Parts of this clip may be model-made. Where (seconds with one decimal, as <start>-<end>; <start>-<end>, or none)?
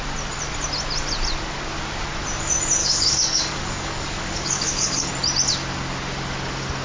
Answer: 2.8-5.1